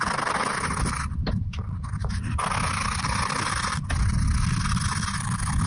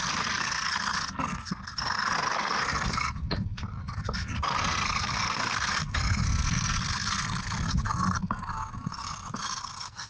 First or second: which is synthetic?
second